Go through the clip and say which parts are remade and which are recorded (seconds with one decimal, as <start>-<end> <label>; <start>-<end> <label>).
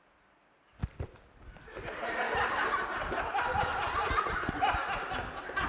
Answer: 0.0-5.7 recorded